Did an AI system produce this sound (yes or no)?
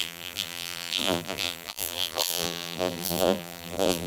yes